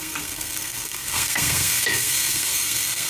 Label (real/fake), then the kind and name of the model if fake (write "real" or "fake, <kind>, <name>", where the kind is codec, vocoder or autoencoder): fake, codec, SNAC